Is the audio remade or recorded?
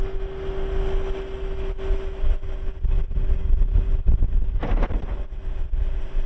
recorded